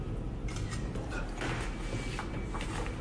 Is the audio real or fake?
real